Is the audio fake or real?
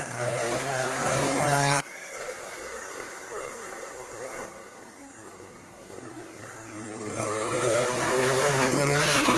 fake